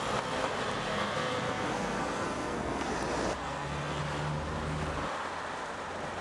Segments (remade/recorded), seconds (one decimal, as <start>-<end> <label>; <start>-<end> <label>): 0.0-0.9 recorded; 0.9-2.9 remade; 2.9-3.4 recorded; 3.4-4.0 remade; 4.0-6.2 recorded